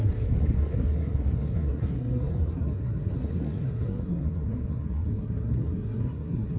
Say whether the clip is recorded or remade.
remade